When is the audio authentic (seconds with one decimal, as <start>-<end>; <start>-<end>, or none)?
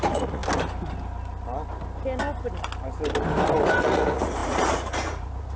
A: 0.4-3.8